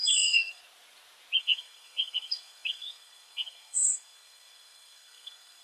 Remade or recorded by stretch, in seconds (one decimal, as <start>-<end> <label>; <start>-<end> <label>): 0.0-0.6 remade; 0.6-1.4 recorded; 1.4-5.6 remade